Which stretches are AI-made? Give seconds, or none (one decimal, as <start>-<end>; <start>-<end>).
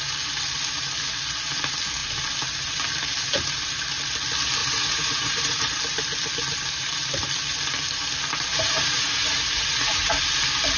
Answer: 4.6-5.7; 8.5-10.2